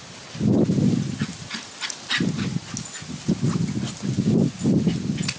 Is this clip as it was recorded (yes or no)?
yes